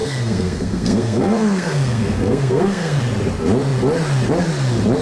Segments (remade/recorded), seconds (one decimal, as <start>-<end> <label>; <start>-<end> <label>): 0.0-3.0 remade; 3.0-5.0 recorded